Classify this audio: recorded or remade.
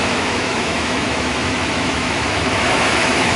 remade